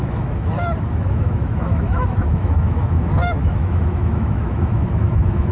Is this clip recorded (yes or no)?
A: no